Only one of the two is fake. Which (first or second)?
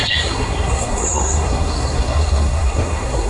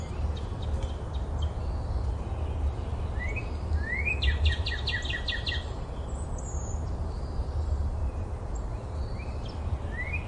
first